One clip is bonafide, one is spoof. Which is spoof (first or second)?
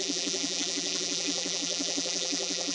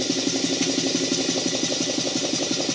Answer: first